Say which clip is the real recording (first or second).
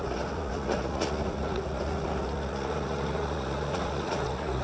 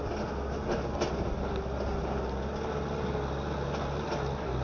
second